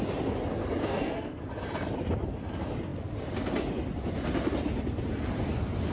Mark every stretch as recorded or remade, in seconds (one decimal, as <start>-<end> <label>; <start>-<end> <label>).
0.0-0.8 recorded; 0.8-1.4 remade; 1.4-5.9 recorded